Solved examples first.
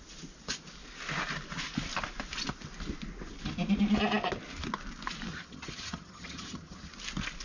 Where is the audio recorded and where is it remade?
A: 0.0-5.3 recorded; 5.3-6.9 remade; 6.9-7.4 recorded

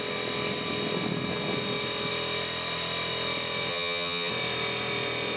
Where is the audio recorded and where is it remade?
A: 0.0-3.7 recorded; 3.7-4.3 remade; 4.3-5.4 recorded